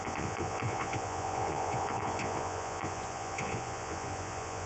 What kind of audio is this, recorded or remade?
remade